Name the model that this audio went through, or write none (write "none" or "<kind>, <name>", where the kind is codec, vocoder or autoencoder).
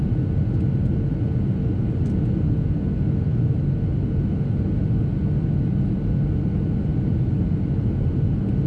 none